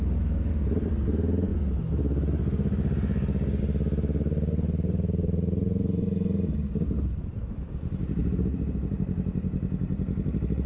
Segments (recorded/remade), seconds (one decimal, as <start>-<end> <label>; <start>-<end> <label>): 0.0-8.2 recorded; 8.2-9.9 remade; 9.9-10.7 recorded